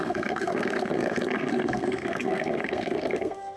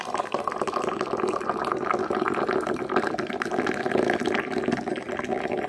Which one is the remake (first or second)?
first